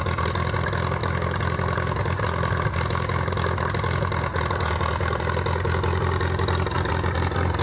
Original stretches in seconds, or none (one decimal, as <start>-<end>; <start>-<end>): 0.0-7.6